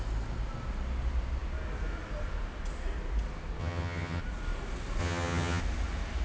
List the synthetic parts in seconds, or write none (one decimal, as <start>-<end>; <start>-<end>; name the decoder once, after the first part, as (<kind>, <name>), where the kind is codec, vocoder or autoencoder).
3.6-4.2 (vocoder, HiFi-GAN); 5.0-5.6